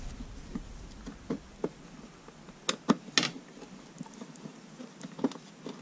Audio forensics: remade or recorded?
recorded